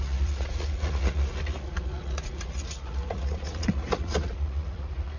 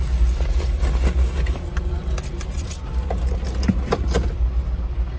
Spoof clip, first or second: first